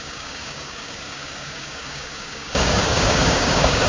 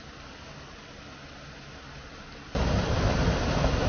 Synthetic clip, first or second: first